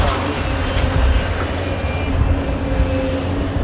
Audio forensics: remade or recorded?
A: recorded